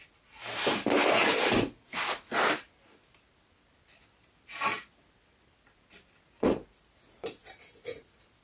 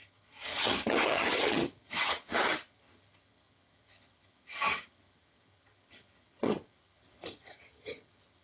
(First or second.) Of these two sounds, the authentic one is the first